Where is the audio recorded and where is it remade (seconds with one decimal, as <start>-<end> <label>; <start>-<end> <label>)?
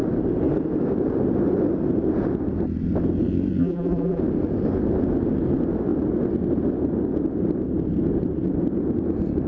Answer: 0.0-3.6 recorded; 3.6-4.2 remade; 4.2-9.5 recorded